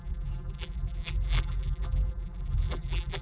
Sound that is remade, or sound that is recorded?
remade